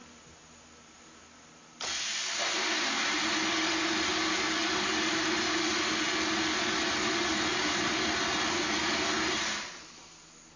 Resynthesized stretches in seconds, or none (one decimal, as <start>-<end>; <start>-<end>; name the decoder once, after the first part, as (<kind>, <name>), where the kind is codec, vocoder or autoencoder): none